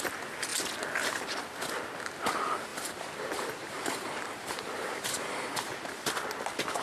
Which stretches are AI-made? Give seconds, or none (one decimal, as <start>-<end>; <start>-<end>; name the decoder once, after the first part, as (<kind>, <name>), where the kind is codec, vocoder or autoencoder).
2.7-5.5 (vocoder, BigVGAN v2)